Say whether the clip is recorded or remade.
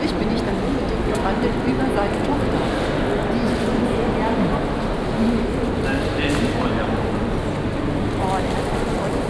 recorded